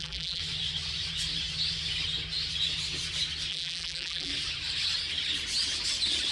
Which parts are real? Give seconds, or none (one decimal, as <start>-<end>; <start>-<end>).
0.4-3.5; 4.3-6.3

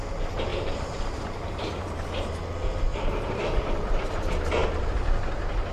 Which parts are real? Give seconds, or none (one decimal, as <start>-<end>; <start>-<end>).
0.0-0.5; 2.3-2.9; 4.0-5.7